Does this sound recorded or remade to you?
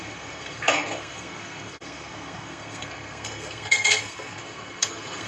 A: remade